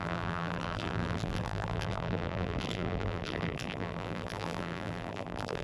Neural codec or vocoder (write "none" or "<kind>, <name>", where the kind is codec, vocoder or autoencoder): vocoder, BigVGAN v2